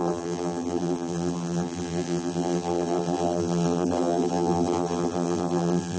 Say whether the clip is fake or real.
fake